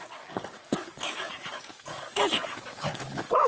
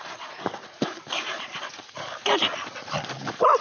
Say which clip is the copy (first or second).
first